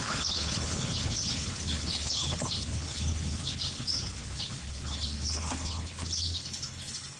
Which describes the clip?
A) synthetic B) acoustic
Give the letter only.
A